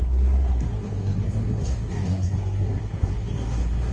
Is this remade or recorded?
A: remade